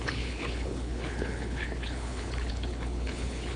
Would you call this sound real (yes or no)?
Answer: no